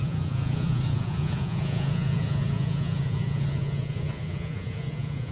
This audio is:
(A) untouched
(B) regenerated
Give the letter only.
B